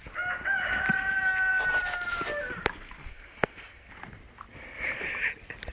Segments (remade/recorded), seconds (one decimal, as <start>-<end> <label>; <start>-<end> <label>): 0.0-3.1 recorded; 3.1-3.9 remade; 3.9-5.7 recorded